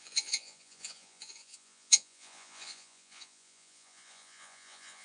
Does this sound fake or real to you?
fake